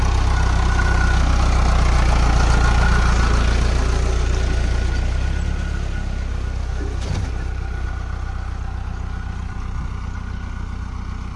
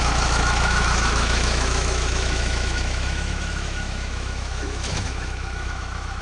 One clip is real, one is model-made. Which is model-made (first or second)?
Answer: second